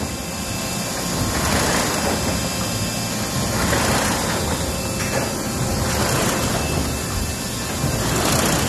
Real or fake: real